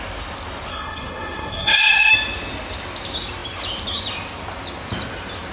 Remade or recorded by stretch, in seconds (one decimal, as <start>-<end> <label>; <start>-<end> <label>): 0.0-0.7 recorded; 0.7-2.1 remade; 2.1-5.5 recorded